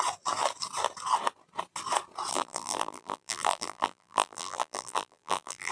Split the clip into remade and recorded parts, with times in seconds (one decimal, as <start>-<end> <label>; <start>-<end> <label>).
0.0-2.3 recorded; 2.3-5.7 remade